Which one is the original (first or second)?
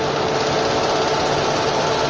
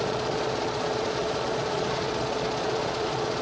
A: first